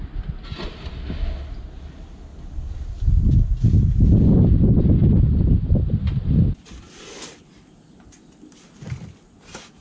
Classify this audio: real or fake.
real